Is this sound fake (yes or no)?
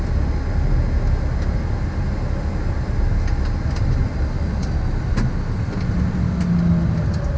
no